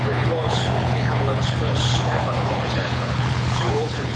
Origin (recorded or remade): remade